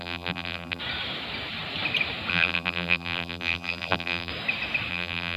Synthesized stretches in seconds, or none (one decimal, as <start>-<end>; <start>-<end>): 0.0-0.8; 2.3-4.3; 4.9-5.4